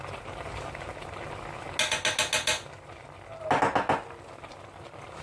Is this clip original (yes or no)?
yes